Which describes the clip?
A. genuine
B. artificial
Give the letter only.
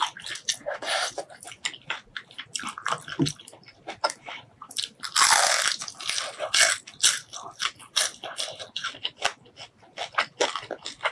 A